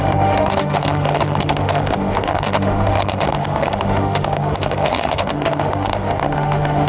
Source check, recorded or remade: remade